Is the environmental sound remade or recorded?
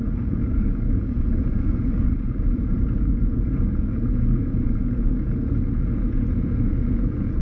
remade